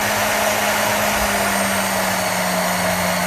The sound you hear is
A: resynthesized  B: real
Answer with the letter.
B